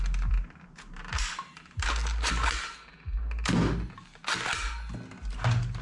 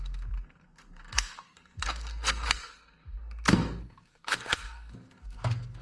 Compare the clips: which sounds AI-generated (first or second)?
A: second